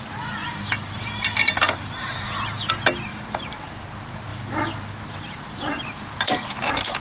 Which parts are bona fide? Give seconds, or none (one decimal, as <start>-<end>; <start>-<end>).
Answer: 0.0-0.4; 2.7-3.1; 3.7-4.3

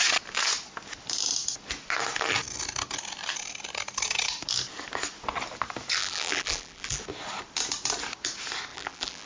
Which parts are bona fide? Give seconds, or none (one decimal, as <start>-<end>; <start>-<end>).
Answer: 0.0-6.0; 7.0-8.7

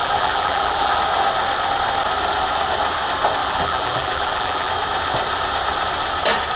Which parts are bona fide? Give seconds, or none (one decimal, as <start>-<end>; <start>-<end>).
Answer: 1.0-3.4; 4.7-6.6

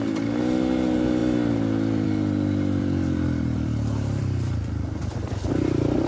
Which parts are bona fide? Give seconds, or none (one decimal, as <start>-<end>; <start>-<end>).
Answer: 0.0-1.2; 4.9-6.1

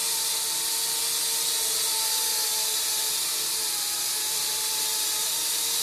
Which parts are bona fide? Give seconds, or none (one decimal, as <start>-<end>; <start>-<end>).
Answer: 0.0-1.9; 5.3-5.8